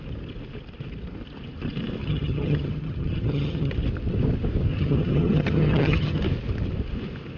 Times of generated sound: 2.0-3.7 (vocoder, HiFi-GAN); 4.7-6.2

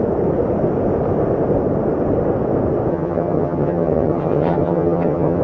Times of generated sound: 2.9-5.4 (vocoder, HiFi-GAN)